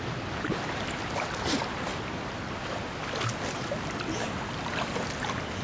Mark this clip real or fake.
real